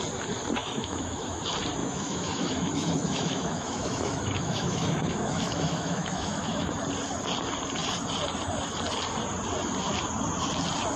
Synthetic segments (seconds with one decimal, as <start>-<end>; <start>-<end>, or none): 0.6-1.4; 1.8-6.7